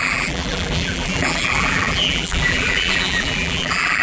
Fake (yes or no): yes